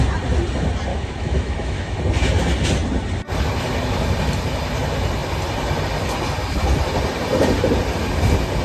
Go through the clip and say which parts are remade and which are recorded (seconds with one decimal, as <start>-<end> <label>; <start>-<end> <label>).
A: 0.0-0.9 recorded; 0.9-2.0 remade; 2.0-8.6 recorded